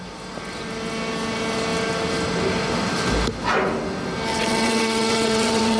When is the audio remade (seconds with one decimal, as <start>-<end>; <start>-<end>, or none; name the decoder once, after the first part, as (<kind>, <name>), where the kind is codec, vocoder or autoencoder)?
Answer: 4.3-5.8 (vocoder, WaveNeXt)